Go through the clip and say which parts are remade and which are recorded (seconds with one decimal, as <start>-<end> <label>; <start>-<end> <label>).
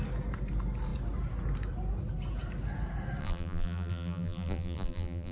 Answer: 0.0-3.2 recorded; 3.2-5.3 remade